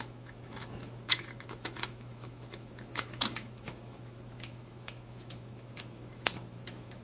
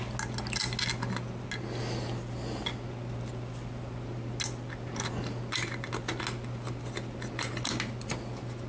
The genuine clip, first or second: second